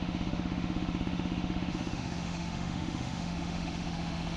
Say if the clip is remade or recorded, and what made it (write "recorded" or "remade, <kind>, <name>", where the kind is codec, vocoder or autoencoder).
remade, autoencoder, DAC-VAE